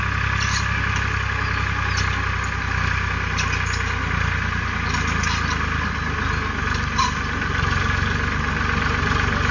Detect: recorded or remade recorded